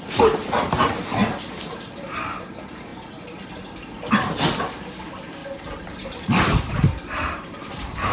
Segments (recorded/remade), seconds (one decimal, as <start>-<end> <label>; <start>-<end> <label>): 0.0-1.2 remade; 1.2-2.1 recorded; 2.1-2.9 remade; 2.9-5.0 recorded; 5.0-5.4 remade; 5.4-6.7 recorded; 6.7-8.1 remade